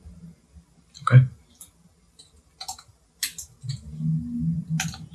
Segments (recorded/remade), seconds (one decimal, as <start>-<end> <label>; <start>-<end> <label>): 0.0-5.1 recorded